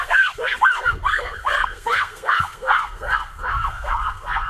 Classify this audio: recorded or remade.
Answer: remade